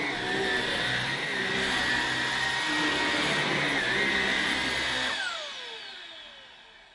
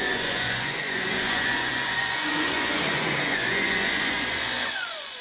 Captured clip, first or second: first